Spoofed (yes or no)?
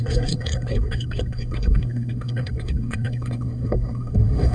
yes